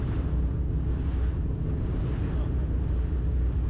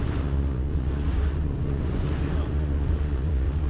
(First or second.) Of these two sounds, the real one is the first